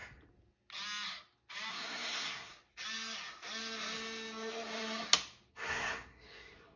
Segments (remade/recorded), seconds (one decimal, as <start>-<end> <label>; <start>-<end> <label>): 0.0-1.7 recorded; 1.7-2.5 remade; 2.5-5.5 recorded; 5.5-6.8 remade